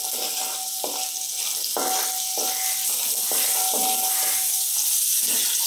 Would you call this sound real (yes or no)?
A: yes